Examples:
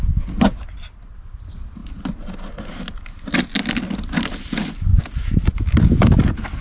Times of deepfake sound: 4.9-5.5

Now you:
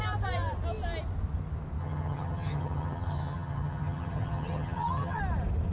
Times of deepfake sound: 1.8-5.2